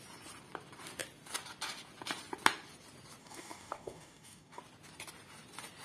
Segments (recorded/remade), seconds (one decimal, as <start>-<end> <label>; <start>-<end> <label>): 0.0-3.2 recorded; 3.2-4.6 remade; 4.6-5.8 recorded